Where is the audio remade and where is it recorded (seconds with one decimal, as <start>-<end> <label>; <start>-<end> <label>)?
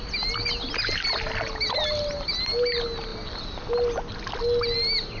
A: 0.0-5.2 recorded